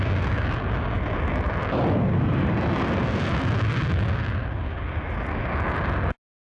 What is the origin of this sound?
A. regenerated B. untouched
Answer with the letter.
B